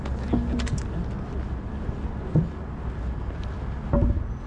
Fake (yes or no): no